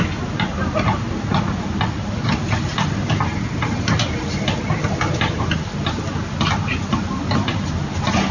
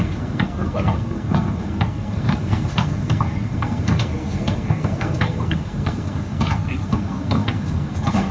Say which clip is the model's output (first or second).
second